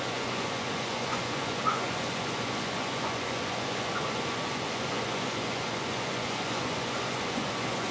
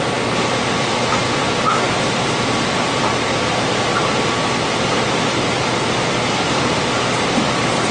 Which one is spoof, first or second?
first